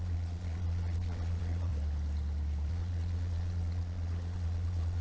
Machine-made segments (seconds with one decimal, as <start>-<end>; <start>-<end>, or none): 0.0-1.7; 2.7-5.0